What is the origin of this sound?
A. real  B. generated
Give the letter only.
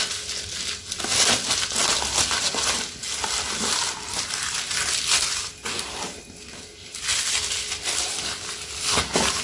A